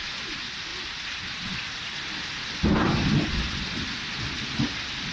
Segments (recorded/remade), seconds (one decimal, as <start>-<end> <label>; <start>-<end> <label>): 0.0-5.1 remade